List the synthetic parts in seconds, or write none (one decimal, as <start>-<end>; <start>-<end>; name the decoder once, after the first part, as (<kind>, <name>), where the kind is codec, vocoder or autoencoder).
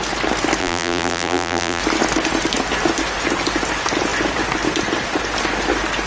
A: 0.6-1.8 (vocoder, BigVGAN v2)